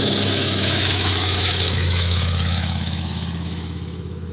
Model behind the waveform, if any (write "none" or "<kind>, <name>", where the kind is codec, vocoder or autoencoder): autoencoder, DAC-VAE